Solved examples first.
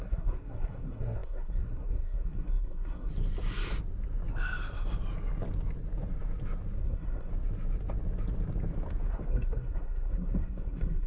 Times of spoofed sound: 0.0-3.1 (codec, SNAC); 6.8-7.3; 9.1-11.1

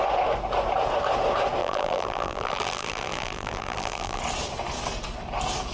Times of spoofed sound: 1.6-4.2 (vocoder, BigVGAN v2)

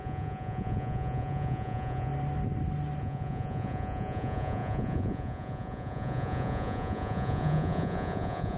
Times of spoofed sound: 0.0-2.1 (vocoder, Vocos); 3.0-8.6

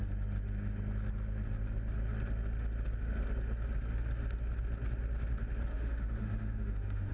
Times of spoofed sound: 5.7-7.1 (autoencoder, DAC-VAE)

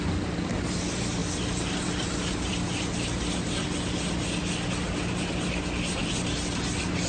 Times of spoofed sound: none

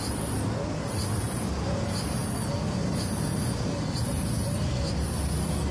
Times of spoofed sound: none

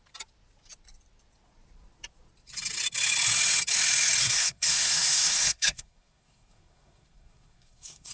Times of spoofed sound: 4.2-8.1 (codec, SNAC)

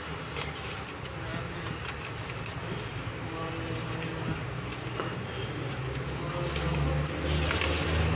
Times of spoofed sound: none